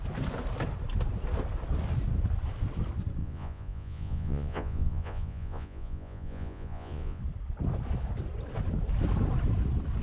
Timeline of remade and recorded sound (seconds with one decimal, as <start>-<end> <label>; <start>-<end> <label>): 0.0-3.2 recorded; 3.2-7.2 remade; 7.2-10.0 recorded